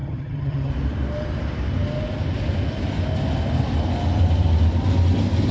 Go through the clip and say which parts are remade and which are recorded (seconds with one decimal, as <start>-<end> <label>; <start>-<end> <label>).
0.0-0.7 remade; 0.7-5.5 recorded